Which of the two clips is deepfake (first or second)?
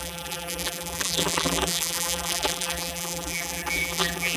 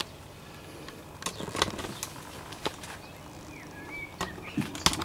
first